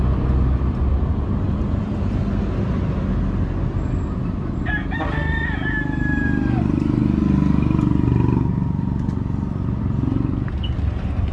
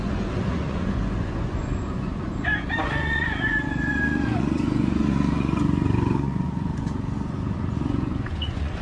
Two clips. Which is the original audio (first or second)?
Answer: first